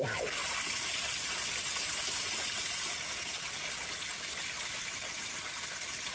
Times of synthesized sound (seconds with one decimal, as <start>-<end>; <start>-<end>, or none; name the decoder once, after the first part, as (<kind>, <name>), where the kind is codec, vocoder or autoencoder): none